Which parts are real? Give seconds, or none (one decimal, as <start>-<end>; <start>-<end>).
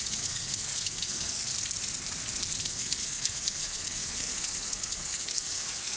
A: 1.5-2.6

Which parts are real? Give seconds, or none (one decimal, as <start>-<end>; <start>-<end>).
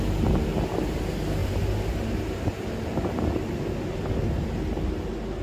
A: 0.0-1.4; 2.4-5.4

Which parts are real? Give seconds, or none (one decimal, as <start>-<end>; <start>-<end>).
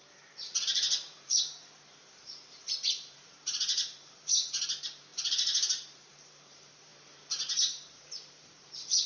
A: 6.9-7.6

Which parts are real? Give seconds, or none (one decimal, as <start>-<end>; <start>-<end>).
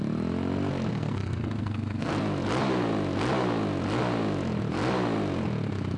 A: 0.0-0.9; 2.1-6.0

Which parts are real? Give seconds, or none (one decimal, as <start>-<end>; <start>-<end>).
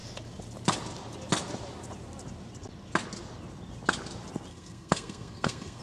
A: 0.0-4.5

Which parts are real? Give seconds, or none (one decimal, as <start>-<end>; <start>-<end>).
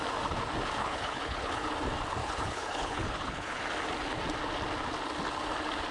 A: 0.0-0.8; 1.7-2.2; 3.6-5.9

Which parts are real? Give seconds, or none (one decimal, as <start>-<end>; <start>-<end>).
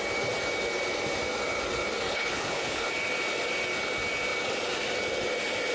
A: 0.0-2.1; 2.9-5.7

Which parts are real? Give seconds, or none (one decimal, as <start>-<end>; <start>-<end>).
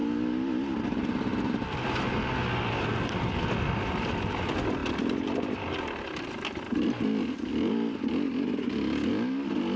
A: 0.0-4.8; 5.7-7.5; 9.1-9.8